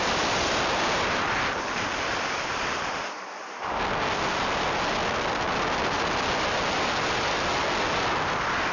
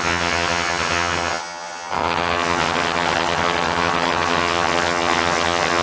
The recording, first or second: first